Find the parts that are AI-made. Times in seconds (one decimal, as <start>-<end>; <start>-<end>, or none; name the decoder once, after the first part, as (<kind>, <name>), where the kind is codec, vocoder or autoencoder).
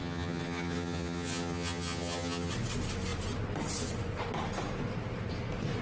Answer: 0.0-2.5 (vocoder, HiFi-GAN)